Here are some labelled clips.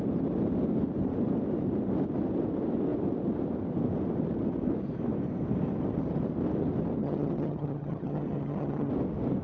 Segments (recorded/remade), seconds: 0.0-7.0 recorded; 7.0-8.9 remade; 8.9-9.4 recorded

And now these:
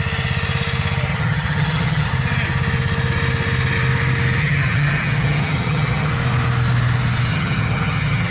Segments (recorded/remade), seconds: 0.0-1.1 recorded; 1.1-2.1 remade; 2.1-4.4 recorded; 4.4-6.1 remade; 6.1-7.3 recorded; 7.3-8.3 remade

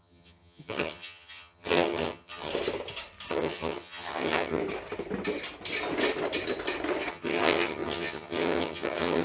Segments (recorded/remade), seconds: 0.0-2.5 remade; 2.5-3.3 recorded; 3.3-4.6 remade; 4.6-7.1 recorded; 7.1-9.2 remade

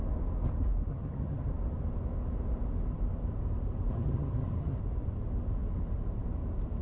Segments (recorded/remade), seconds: 0.0-0.9 recorded; 0.9-1.5 remade; 1.5-3.9 recorded; 3.9-4.8 remade; 4.8-6.8 recorded

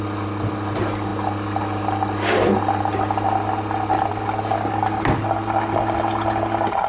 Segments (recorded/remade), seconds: 0.0-6.9 recorded

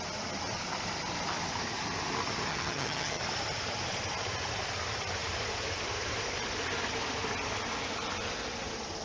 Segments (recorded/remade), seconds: 0.0-2.5 recorded; 2.5-3.2 remade; 3.2-9.0 recorded